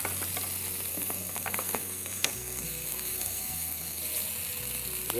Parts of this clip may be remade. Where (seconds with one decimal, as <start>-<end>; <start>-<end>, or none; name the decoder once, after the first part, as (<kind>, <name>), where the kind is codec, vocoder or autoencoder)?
0.9-4.0 (codec, SNAC)